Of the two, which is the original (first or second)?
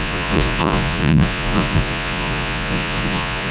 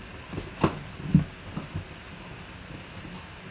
second